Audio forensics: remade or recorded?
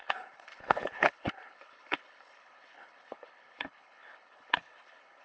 remade